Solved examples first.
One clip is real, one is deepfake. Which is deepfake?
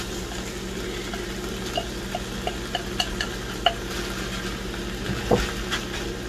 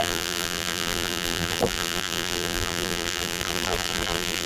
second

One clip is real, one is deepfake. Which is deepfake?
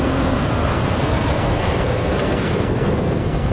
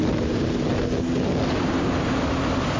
first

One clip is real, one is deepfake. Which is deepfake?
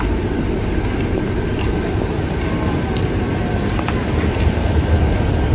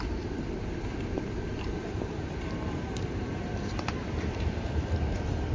second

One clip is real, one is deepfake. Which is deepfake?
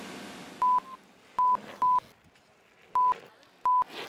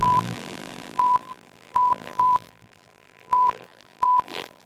second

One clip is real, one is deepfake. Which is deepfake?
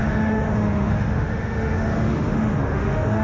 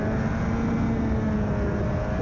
first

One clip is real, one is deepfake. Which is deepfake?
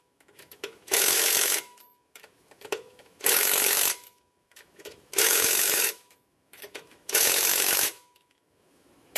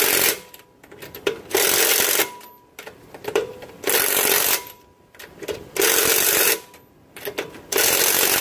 first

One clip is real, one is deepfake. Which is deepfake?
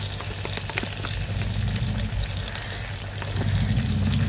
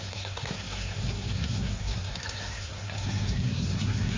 second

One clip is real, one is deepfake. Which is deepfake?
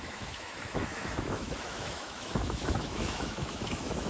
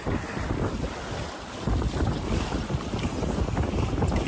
first